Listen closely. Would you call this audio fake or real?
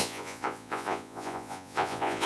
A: fake